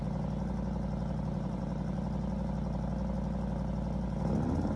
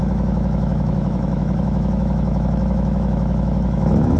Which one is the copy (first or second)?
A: second